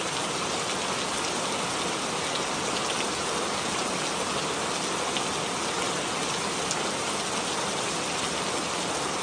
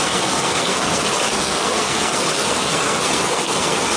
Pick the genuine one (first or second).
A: first